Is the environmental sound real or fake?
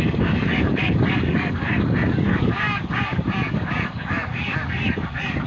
fake